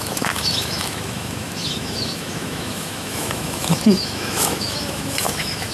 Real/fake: fake